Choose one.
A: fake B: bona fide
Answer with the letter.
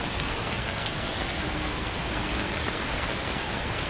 A